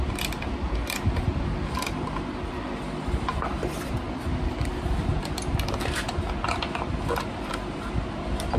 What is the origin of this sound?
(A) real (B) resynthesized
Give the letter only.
A